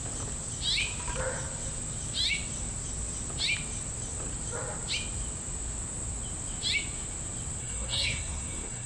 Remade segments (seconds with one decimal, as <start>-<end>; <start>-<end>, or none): 7.6-8.9